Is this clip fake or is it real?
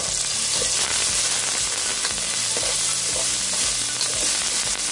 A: real